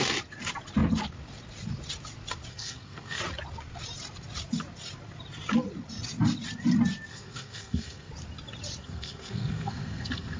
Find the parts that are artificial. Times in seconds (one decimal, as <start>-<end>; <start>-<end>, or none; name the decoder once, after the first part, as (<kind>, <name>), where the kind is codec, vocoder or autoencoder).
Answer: 2.5-3.2 (codec, SNAC); 7.1-8.1; 8.8-10.4